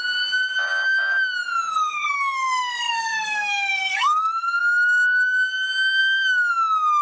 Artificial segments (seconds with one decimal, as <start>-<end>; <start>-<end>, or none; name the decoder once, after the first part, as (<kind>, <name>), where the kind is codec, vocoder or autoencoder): 1.7-4.6 (codec, SNAC)